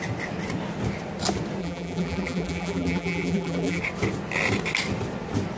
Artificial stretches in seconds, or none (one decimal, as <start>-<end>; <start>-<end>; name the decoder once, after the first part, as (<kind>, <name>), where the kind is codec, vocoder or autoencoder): 1.6-3.8 (vocoder, BigVGAN v2)